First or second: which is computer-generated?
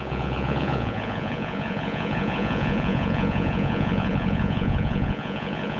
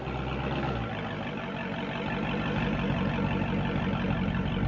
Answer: first